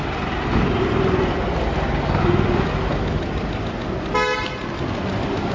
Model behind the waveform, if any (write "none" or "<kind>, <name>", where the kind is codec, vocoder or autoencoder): none